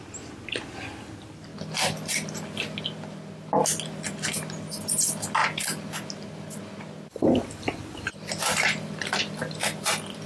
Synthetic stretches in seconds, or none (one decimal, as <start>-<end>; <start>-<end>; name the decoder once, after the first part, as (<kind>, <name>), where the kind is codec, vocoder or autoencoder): none